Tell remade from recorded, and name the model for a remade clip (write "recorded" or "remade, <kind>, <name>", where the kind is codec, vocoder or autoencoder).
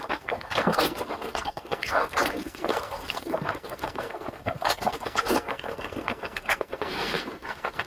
remade, codec, SNAC